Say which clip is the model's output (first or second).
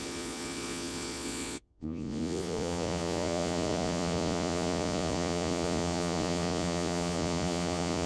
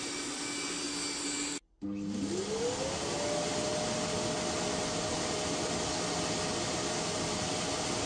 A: first